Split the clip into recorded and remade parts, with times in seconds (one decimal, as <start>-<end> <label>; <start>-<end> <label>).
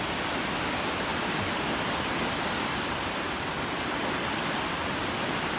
0.0-1.1 recorded; 1.1-4.2 remade; 4.2-5.6 recorded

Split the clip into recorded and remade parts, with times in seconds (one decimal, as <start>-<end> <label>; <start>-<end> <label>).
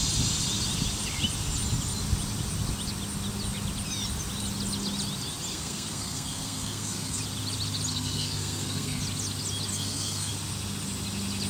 0.0-5.5 recorded; 5.5-7.2 remade; 7.2-7.9 recorded; 7.9-9.0 remade; 9.0-9.7 recorded; 9.7-10.3 remade; 10.3-11.5 recorded